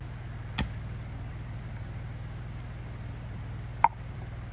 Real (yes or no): yes